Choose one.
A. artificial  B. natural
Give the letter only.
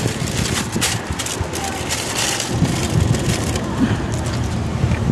B